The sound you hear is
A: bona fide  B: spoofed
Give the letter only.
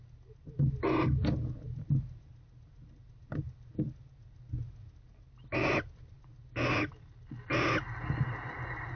A